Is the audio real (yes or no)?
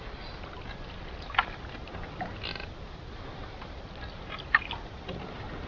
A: yes